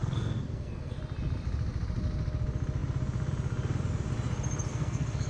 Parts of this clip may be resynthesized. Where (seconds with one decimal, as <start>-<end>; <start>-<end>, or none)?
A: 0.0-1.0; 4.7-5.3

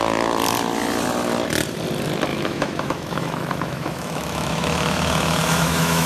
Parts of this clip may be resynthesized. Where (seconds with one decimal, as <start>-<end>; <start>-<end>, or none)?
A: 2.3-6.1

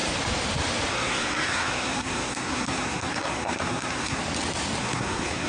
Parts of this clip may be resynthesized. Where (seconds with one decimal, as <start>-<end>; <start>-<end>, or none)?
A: 0.9-4.2; 4.8-5.5

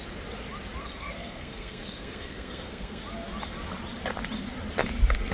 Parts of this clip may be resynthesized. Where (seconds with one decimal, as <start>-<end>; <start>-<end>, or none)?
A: 0.8-3.0

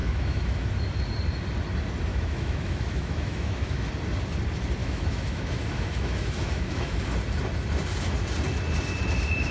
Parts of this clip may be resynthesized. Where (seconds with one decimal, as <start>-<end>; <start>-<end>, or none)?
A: 0.0-0.7; 2.1-3.9; 4.8-7.0

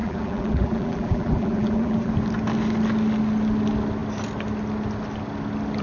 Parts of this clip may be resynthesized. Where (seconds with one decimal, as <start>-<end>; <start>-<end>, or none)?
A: 0.0-2.1

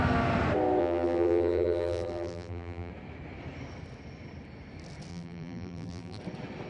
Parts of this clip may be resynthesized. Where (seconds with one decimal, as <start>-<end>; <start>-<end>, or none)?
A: 0.8-2.9; 5.1-6.2